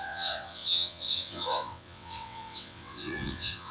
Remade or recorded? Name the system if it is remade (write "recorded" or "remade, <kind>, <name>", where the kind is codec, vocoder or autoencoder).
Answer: remade, vocoder, WaveNeXt